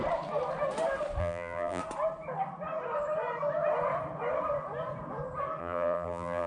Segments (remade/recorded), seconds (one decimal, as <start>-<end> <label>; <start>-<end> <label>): 0.0-1.2 recorded; 1.2-1.8 remade; 1.8-5.6 recorded; 5.6-6.5 remade